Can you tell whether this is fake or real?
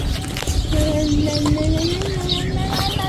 real